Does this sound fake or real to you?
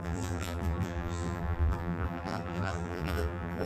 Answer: fake